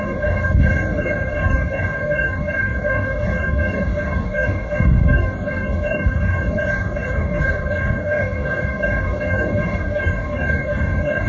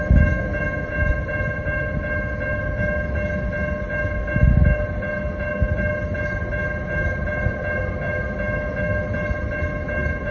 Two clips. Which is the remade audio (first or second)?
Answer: first